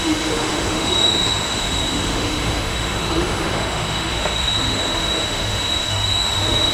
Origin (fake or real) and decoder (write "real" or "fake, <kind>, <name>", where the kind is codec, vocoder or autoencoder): fake, autoencoder, DAC-VAE